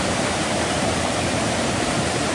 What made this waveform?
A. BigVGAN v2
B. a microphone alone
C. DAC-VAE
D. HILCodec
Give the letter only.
A